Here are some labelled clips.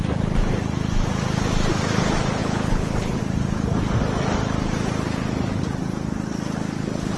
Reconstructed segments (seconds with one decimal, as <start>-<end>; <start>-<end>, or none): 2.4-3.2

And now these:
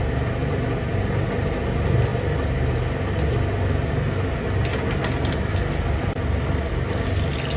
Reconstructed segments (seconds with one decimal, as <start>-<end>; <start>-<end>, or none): none

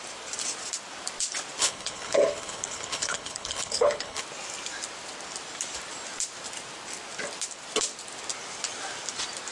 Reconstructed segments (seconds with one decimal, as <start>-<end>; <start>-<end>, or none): 1.6-4.2

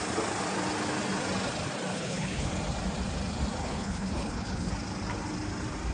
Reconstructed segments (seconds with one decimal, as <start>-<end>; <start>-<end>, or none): 1.9-2.5; 3.6-4.7